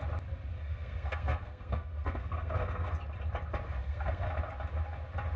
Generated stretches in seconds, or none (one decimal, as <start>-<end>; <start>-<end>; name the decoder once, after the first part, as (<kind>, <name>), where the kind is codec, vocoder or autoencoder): 0.5-2.9 (codec, SNAC); 3.8-4.3